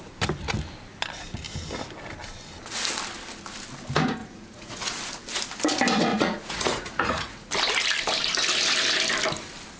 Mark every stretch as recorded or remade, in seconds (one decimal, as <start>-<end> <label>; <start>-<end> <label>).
0.0-4.2 recorded; 4.2-5.0 remade; 5.0-6.1 recorded; 6.1-7.5 remade; 7.5-9.8 recorded